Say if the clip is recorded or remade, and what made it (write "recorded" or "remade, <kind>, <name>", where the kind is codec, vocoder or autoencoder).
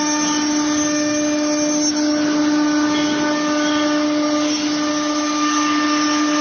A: recorded